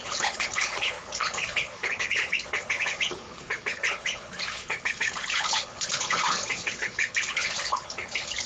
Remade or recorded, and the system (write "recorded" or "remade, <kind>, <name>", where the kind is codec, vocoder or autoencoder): remade, codec, HILCodec